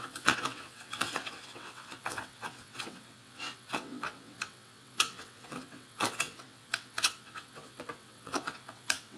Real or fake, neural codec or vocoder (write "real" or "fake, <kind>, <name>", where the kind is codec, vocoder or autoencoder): fake, vocoder, WaveNeXt